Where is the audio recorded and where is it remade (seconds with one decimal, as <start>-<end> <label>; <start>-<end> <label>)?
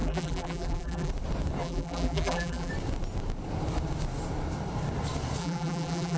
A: 0.0-1.1 remade; 1.1-1.6 recorded; 1.6-2.7 remade; 2.7-5.4 recorded; 5.4-6.2 remade